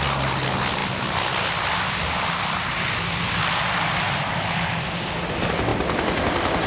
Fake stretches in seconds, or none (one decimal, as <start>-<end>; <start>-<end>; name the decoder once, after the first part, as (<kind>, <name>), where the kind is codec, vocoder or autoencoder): none